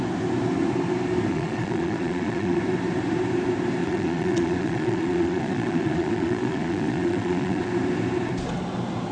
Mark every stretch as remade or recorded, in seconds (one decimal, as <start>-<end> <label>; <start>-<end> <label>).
0.0-1.3 recorded; 1.3-2.6 remade; 2.6-3.8 recorded; 3.8-7.7 remade; 7.7-9.1 recorded